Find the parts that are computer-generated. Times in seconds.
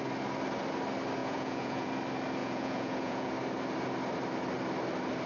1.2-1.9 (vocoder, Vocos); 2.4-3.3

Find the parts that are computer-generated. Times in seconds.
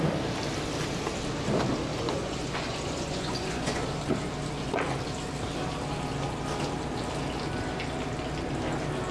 1.9-3.8 (vocoder, Vocos)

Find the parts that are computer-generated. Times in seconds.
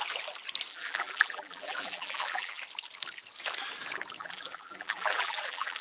0.7-2.6 (vocoder, BigVGAN v2); 4.2-5.8